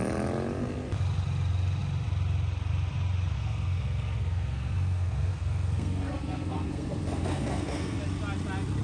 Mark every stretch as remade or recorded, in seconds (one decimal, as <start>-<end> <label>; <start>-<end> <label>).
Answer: 0.0-3.3 recorded; 3.3-8.0 remade; 8.0-8.8 recorded